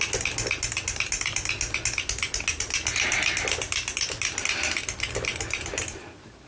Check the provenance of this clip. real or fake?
real